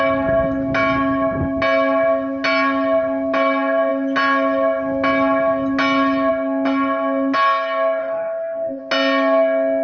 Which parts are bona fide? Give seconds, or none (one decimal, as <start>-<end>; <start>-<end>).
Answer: 0.0-8.0; 8.8-9.8